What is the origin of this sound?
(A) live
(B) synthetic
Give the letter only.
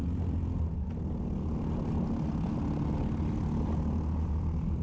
A